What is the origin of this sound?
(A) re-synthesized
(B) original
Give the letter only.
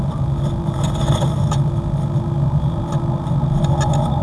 B